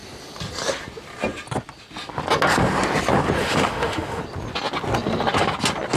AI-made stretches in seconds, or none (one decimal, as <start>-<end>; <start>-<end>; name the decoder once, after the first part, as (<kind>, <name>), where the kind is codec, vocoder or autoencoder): 3.4-4.2 (autoencoder, DAC-VAE)